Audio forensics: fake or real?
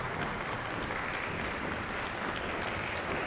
real